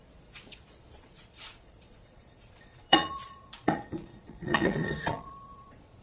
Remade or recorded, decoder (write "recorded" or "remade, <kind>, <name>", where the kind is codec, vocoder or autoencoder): remade, vocoder, Vocos